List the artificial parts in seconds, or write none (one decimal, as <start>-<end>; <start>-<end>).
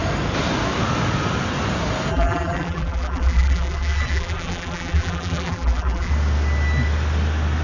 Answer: 2.1-6.1